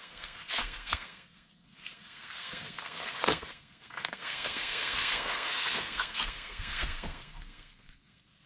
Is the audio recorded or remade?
remade